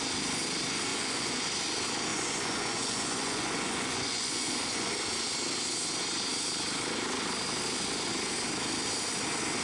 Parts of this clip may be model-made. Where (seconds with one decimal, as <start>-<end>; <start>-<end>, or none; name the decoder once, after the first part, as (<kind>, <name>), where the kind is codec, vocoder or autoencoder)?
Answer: 0.9-1.4 (vocoder, Vocos); 2.1-4.9